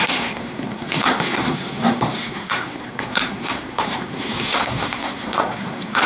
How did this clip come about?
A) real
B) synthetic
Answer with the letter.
B